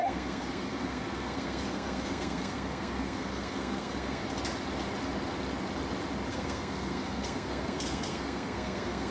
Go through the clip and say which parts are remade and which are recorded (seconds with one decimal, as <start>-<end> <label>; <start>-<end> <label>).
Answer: 0.0-4.2 remade; 4.2-6.3 recorded; 6.3-9.1 remade